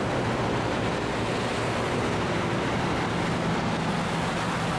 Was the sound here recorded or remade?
recorded